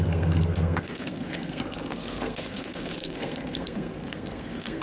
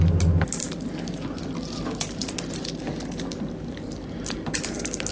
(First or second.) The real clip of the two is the second